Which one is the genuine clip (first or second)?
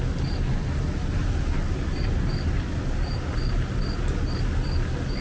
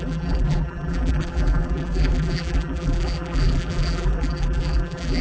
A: first